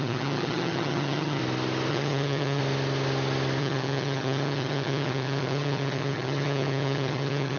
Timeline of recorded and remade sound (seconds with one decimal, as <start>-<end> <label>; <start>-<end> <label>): 0.0-1.4 remade; 1.4-1.9 recorded; 1.9-2.6 remade; 2.6-3.6 recorded; 3.6-7.6 remade